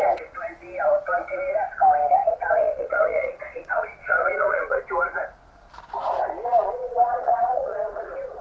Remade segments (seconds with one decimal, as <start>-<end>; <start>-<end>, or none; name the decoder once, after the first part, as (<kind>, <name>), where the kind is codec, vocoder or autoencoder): 2.1-4.8 (vocoder, Vocos); 6.6-8.4